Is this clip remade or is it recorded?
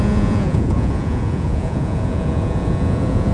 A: remade